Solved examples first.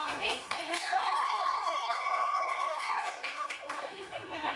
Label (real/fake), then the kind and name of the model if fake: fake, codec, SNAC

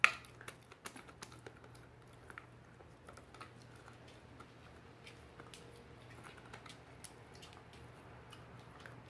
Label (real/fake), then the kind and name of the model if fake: real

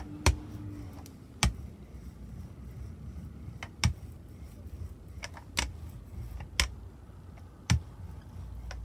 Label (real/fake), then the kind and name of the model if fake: real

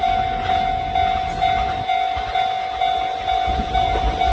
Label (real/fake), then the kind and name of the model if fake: real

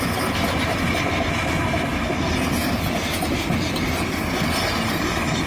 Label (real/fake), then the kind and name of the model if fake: real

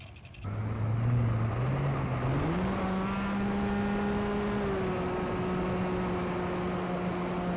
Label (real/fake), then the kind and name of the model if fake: real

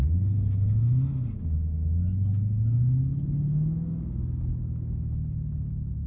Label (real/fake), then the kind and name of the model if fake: real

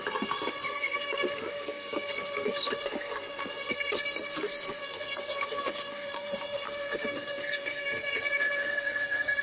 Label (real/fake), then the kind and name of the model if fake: fake, codec, SNAC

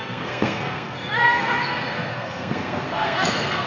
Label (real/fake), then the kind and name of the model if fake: fake, codec, SNAC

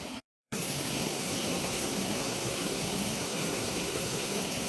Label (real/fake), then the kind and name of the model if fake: fake, codec, SNAC